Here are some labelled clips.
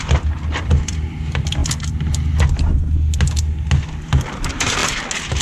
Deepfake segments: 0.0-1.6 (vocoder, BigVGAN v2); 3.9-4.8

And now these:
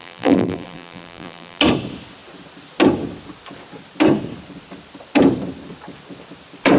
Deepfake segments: 0.0-1.6 (vocoder, BigVGAN v2)